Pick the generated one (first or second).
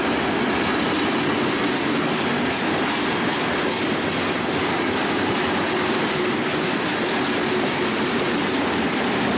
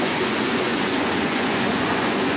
second